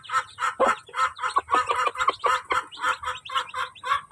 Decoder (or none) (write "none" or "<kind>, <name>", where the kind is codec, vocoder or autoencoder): none